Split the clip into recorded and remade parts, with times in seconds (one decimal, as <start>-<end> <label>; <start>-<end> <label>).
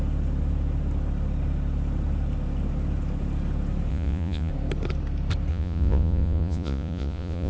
0.0-3.9 recorded; 3.9-4.5 remade; 4.5-5.5 recorded; 5.5-7.5 remade